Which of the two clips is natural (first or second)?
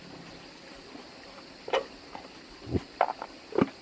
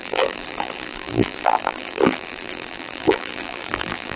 first